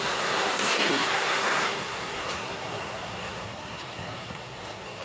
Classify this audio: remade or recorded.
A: remade